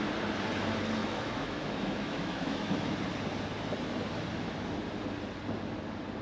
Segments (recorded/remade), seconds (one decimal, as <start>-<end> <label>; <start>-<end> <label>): 0.0-1.0 recorded; 1.0-2.9 remade; 2.9-6.2 recorded